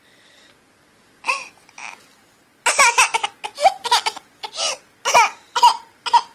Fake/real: real